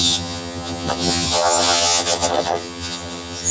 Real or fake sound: fake